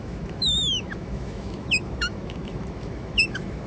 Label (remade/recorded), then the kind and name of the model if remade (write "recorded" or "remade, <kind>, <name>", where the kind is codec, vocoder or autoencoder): remade, autoencoder, DAC-VAE